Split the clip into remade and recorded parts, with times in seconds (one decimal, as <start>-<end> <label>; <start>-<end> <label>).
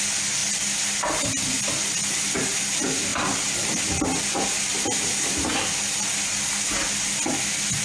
0.0-7.8 recorded